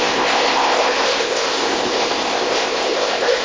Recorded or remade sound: remade